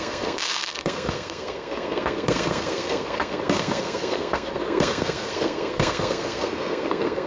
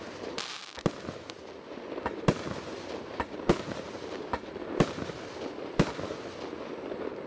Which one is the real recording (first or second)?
second